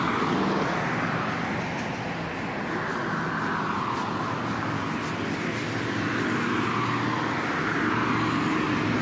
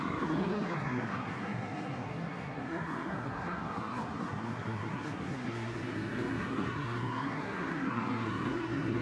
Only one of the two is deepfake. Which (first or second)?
second